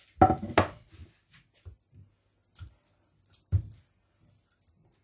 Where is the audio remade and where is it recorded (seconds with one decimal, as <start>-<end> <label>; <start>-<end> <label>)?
0.0-5.0 recorded